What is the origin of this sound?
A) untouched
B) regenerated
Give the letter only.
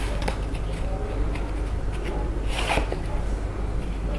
A